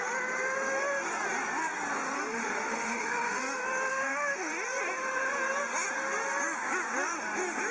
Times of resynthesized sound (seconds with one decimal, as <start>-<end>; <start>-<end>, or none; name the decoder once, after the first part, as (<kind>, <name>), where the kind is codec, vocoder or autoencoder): 2.3-3.4 (autoencoder, DAC-VAE); 3.9-4.5